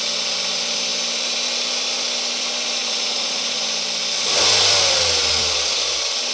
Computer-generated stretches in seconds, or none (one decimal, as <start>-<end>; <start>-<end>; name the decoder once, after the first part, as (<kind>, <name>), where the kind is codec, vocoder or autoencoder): 2.8-3.6 (vocoder, Vocos)